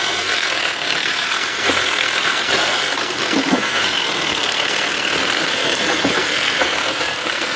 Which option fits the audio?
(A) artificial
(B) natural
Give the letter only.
A